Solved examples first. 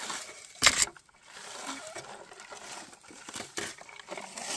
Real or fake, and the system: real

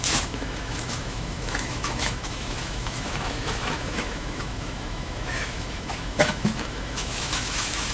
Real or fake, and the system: fake, autoencoder, DAC-VAE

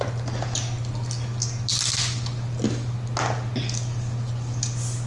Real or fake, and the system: real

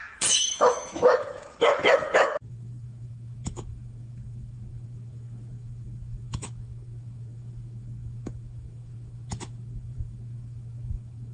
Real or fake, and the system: fake, autoencoder, DAC-VAE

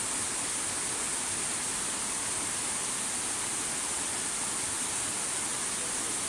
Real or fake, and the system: real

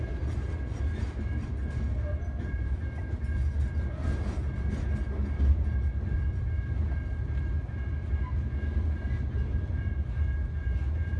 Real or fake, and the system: real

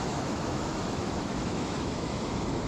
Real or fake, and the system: fake, autoencoder, DAC-VAE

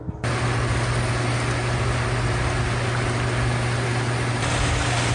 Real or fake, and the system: real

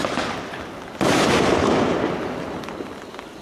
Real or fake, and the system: real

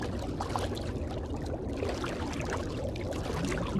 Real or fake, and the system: real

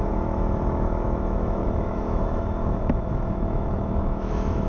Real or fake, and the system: fake, autoencoder, DAC-VAE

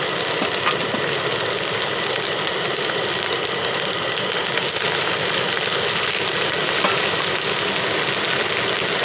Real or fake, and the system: real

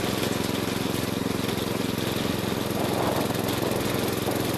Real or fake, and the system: real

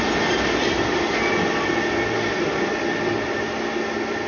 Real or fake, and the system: real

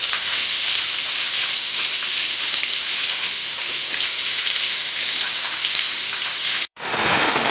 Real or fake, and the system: fake, autoencoder, DAC-VAE